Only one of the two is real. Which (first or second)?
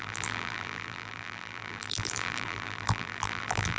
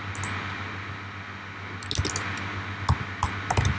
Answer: second